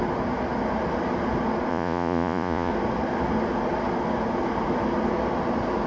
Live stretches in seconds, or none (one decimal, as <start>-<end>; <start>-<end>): 0.0-1.7; 2.7-5.9